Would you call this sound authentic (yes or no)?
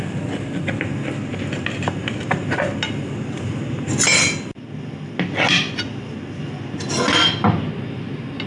yes